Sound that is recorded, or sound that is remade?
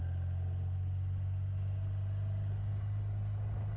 recorded